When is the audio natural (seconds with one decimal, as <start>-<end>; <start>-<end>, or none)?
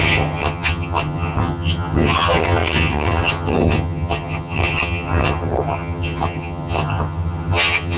none